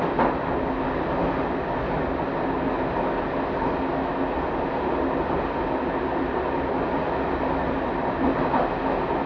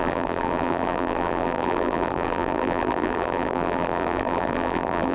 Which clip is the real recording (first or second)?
first